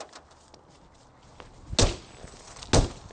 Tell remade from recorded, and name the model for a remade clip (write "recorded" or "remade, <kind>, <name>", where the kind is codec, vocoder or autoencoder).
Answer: recorded